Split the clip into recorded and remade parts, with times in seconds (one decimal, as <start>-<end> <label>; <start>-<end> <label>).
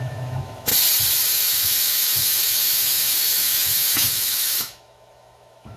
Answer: 0.0-0.7 remade; 0.7-1.3 recorded; 1.3-5.8 remade